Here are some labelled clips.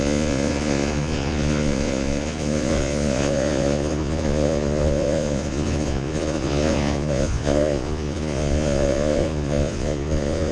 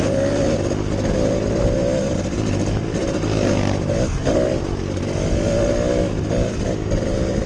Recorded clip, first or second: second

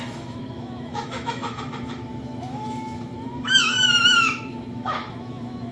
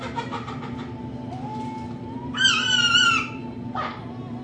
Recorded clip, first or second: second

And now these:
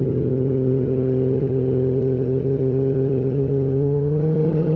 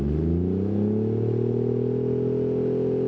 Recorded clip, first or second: second